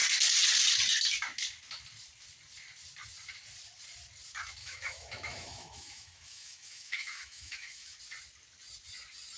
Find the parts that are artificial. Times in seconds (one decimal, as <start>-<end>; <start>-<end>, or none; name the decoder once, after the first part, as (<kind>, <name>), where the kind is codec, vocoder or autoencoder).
4.6-8.0 (autoencoder, DAC-VAE)